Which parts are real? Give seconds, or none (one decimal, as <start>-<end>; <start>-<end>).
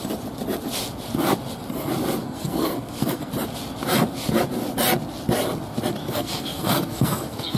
0.0-2.2; 3.3-6.0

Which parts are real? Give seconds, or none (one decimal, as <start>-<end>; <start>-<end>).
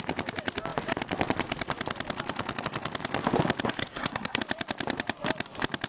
0.0-3.8; 4.4-5.9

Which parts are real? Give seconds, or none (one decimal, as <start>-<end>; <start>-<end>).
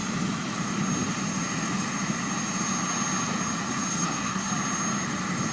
0.0-3.9; 4.5-5.5